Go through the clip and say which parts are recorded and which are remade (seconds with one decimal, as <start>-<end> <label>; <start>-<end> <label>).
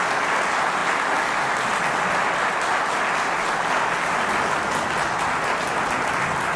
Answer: 0.0-6.6 recorded